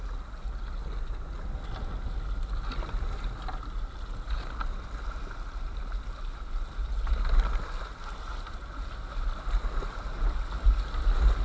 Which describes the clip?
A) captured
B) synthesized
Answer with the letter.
A